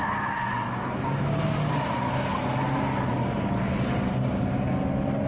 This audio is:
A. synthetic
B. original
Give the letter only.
B